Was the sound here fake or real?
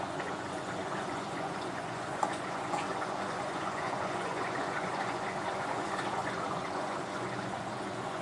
fake